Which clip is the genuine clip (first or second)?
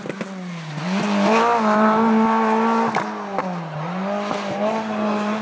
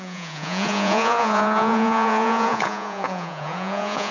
first